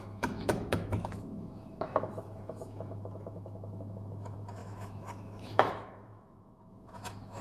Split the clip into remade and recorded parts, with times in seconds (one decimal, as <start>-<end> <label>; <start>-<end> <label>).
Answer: 0.0-7.4 remade

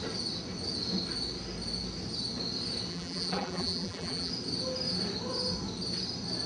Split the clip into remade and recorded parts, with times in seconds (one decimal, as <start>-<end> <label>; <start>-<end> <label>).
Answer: 0.0-2.9 recorded; 2.9-4.3 remade; 4.3-6.5 recorded

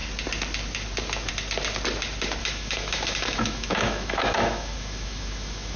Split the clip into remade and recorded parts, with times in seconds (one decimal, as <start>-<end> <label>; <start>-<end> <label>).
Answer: 0.0-2.4 recorded; 2.4-5.8 remade